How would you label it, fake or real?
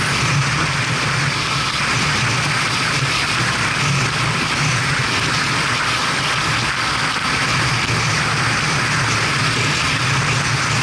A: real